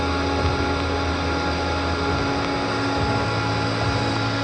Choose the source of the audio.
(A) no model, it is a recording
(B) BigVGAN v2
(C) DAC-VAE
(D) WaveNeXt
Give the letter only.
A